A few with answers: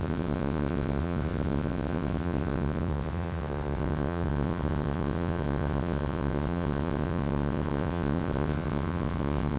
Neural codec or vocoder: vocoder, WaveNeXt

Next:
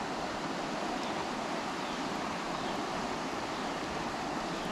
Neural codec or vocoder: none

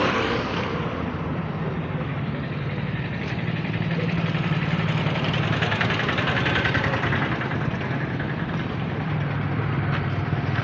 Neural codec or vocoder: vocoder, BigVGAN v2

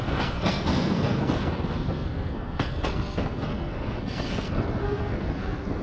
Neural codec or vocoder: codec, SNAC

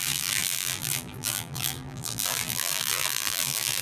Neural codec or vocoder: vocoder, BigVGAN v2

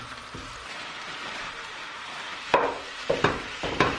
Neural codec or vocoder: vocoder, BigVGAN v2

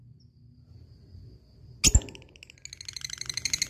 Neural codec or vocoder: none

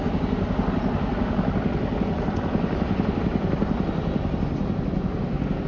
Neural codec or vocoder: none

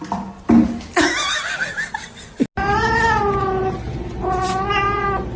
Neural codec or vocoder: none